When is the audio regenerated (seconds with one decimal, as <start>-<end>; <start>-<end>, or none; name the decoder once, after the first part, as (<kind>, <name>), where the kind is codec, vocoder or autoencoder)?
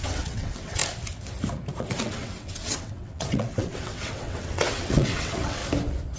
0.0-0.8 (vocoder, WaveNeXt); 1.8-5.6